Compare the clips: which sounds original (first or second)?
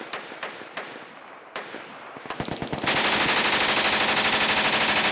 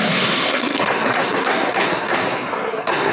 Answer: first